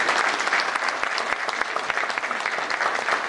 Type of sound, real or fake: real